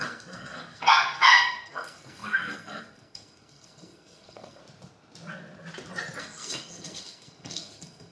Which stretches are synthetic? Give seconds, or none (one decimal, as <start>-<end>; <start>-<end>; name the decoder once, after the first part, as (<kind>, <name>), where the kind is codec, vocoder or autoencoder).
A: 0.0-4.6 (codec, SNAC); 6.2-8.1

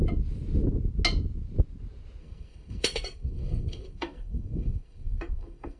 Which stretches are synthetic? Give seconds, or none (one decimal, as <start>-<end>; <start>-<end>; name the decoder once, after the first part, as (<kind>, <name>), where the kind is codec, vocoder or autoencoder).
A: 2.2-5.8 (codec, SNAC)

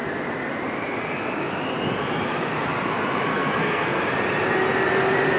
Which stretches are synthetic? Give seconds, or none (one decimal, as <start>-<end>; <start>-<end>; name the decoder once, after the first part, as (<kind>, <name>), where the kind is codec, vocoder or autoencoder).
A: 3.3-4.0 (codec, SNAC)

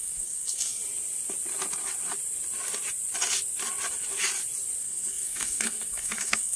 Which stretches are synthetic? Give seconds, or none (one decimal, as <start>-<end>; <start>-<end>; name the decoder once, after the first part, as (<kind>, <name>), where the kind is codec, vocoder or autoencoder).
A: 0.0-0.8 (codec, SNAC); 4.8-6.6